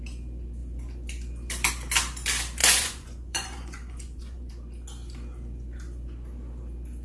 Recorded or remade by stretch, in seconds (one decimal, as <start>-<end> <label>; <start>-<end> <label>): 0.0-2.6 recorded; 2.6-4.5 remade; 4.5-7.0 recorded

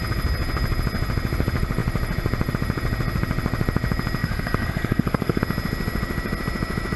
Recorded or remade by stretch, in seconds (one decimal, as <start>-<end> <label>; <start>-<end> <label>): 0.0-4.2 recorded; 4.2-5.4 remade; 5.4-7.0 recorded

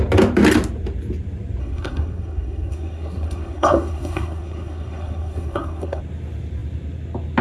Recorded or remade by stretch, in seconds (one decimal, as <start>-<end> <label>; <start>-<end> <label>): 0.0-1.6 recorded; 1.6-6.0 remade; 6.0-7.4 recorded